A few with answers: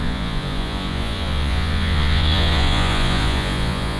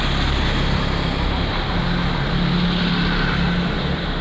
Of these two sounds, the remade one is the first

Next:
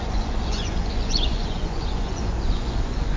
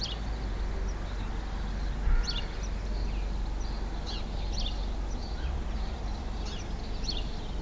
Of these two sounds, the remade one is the first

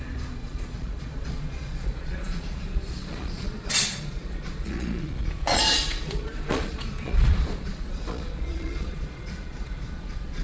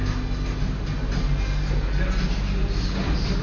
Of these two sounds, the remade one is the first